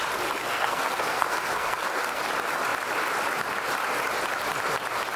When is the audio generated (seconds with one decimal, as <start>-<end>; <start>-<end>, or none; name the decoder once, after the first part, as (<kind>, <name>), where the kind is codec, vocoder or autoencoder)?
0.4-2.2 (codec, SNAC)